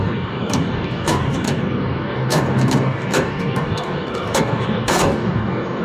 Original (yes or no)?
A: no